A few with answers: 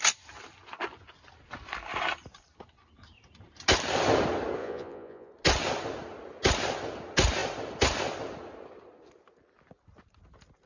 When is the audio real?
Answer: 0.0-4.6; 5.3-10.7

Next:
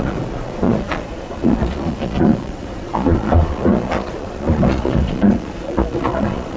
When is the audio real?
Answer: none